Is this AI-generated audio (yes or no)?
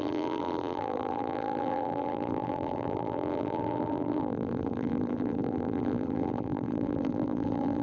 yes